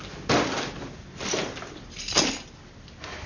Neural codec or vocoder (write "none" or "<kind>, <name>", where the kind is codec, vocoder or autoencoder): none